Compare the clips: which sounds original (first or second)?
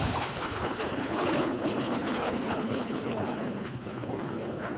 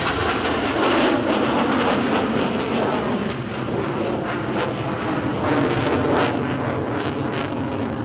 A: second